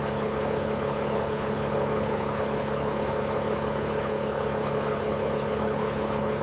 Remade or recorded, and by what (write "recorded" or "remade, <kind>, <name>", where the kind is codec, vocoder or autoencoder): remade, codec, HILCodec